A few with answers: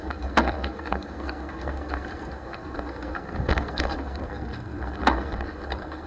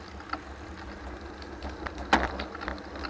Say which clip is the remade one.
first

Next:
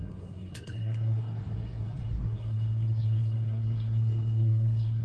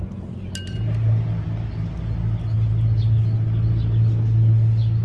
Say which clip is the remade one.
first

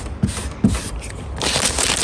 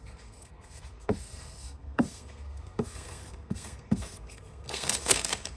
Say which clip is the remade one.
second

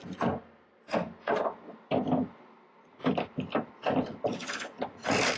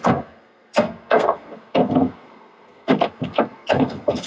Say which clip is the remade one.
second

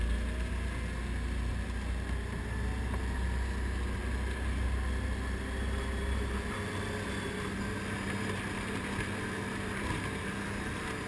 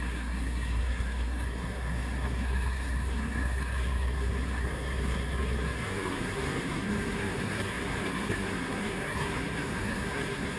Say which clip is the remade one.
second